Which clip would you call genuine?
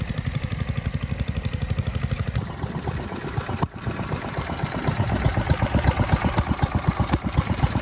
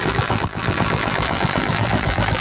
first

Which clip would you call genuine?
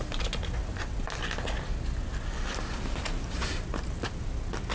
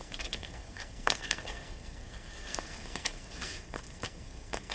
first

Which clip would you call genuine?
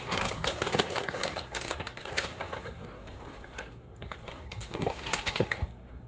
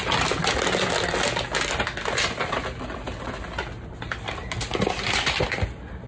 second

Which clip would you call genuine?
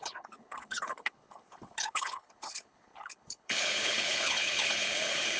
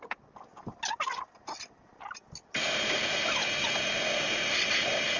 second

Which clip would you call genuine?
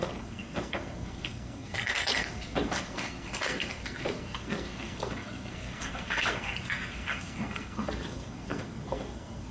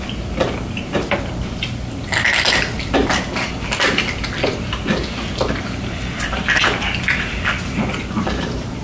second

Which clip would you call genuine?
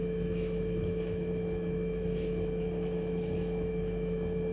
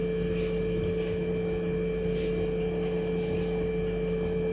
second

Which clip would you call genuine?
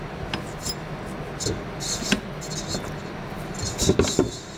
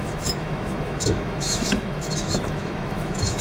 first